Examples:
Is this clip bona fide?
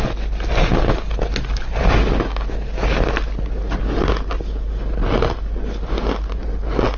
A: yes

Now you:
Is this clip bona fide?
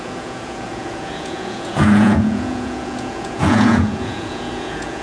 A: no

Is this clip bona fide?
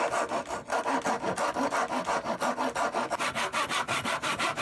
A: yes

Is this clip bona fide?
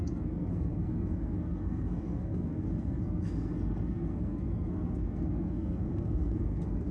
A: no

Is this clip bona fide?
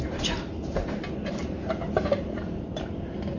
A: yes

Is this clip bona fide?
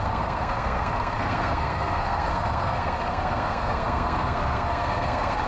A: no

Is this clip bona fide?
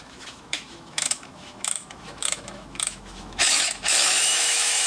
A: no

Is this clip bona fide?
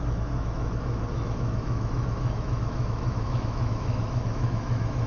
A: no